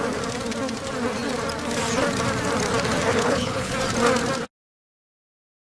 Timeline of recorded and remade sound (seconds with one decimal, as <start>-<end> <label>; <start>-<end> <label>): 0.0-3.1 recorded; 3.1-3.7 remade; 3.7-5.6 recorded